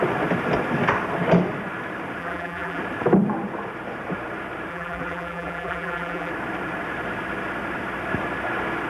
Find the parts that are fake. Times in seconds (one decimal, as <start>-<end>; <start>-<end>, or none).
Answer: 2.2-2.8; 4.7-6.3